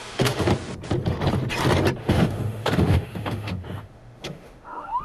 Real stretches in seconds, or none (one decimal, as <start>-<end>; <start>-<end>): 0.5-2.0